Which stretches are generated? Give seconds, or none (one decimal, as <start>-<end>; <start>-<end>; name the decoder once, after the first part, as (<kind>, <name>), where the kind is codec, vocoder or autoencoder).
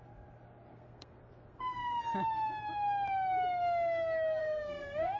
0.7-2.0 (codec, SNAC); 4.4-5.2